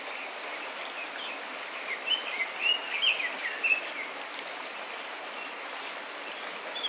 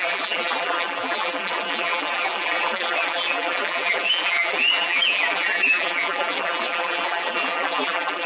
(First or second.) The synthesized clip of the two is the second